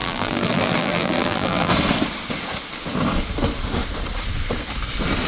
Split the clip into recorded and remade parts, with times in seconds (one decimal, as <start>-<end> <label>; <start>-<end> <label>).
0.0-1.7 remade; 1.7-5.3 recorded